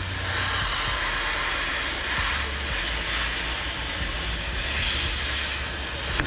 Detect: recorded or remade recorded